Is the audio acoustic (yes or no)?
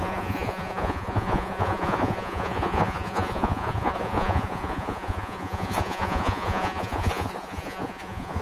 no